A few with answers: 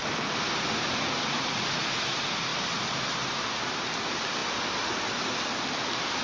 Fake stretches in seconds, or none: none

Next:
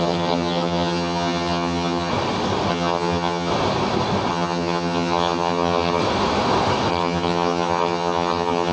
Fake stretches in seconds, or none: 0.0-2.1 (vocoder, HiFi-GAN); 2.7-3.5; 4.3-6.0; 6.9-8.7

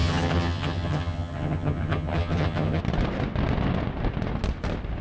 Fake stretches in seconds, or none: 0.0-2.8 (vocoder, HiFi-GAN)

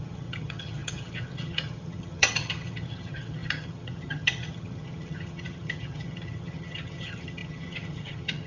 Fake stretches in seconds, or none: 0.0-8.5 (vocoder, HiFi-GAN)

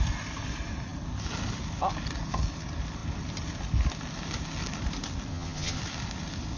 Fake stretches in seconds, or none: 5.3-5.8 (vocoder, HiFi-GAN)

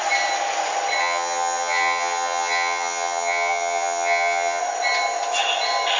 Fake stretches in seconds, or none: 1.0-4.6 (vocoder, HiFi-GAN)